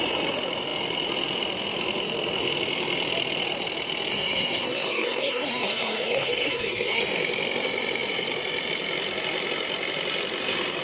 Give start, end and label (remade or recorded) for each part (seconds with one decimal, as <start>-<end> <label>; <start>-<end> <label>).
0.0-4.1 recorded; 4.1-7.0 remade; 7.0-10.8 recorded